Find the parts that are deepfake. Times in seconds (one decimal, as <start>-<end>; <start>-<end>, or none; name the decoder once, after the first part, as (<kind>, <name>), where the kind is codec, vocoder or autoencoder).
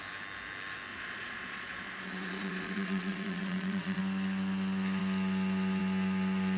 0.9-4.0 (vocoder, Vocos)